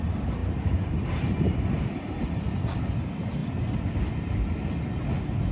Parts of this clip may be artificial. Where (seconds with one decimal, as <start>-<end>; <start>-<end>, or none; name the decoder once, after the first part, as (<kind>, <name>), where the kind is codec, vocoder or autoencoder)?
0.4-1.6 (vocoder, BigVGAN v2)